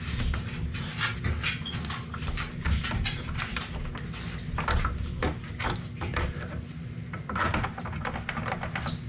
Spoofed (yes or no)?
no